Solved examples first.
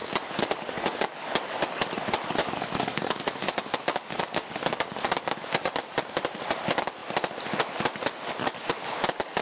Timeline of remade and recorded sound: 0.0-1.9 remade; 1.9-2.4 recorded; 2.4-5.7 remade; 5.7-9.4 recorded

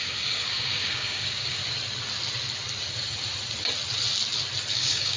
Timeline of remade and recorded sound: 0.0-1.6 remade; 1.6-4.7 recorded; 4.7-5.2 remade

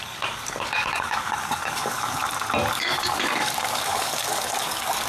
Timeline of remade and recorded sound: 0.0-2.2 remade; 2.2-2.7 recorded; 2.7-5.1 remade

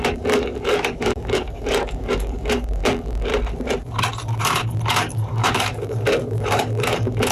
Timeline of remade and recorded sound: 0.0-3.3 remade; 3.3-4.9 recorded; 4.9-7.3 remade